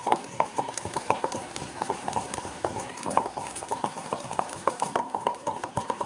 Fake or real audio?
fake